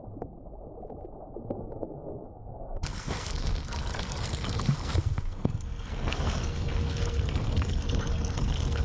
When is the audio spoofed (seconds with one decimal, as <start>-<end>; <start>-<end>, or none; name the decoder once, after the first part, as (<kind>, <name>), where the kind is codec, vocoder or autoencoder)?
1.6-8.8 (codec, SNAC)